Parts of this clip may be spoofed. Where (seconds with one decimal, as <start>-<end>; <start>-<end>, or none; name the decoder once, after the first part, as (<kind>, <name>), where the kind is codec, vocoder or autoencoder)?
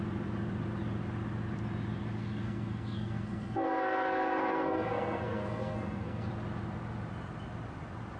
2.2-6.3 (codec, SNAC)